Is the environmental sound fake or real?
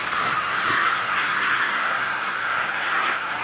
fake